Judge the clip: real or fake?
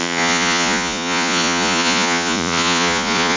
fake